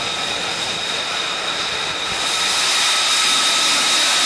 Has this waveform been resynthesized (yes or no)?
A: no